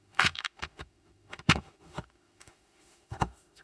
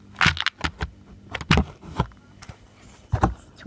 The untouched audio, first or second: second